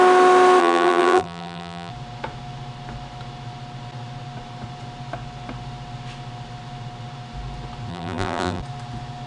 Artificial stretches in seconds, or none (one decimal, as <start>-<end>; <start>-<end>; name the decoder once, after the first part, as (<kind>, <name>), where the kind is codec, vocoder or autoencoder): 0.6-1.9 (vocoder, BigVGAN v2); 7.9-8.6